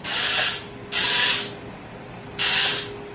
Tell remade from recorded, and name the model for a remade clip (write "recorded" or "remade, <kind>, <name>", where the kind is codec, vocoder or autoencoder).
recorded